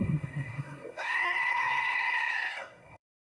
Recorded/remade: remade